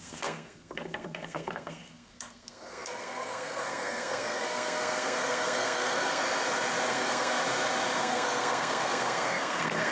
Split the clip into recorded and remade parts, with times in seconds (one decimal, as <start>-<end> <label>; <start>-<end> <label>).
0.0-6.2 remade; 6.2-6.9 recorded; 6.9-7.4 remade; 7.4-8.0 recorded; 8.0-9.9 remade